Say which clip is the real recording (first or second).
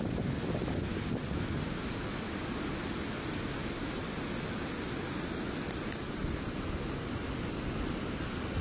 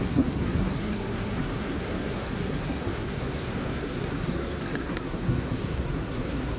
first